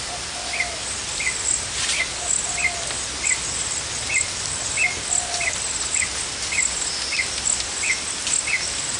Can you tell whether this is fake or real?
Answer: real